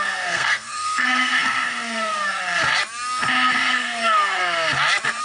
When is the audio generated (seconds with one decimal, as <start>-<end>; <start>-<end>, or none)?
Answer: 0.0-2.6; 3.7-4.4